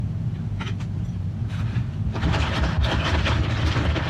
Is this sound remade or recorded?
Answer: remade